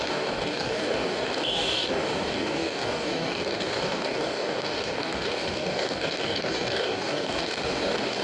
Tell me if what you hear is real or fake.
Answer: fake